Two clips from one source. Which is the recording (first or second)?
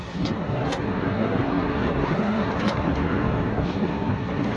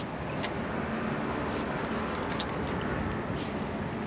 second